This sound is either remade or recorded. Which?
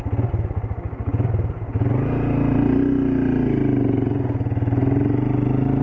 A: recorded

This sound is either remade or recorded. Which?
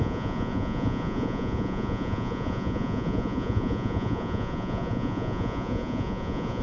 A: remade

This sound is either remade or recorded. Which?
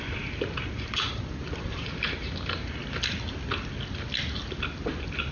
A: recorded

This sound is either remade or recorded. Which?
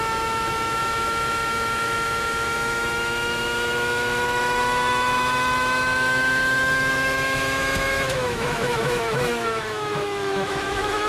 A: remade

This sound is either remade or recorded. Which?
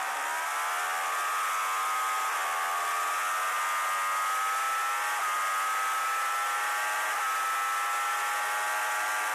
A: recorded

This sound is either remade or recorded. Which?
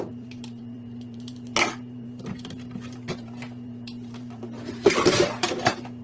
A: remade